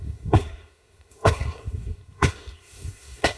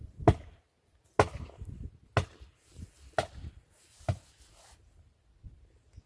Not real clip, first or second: first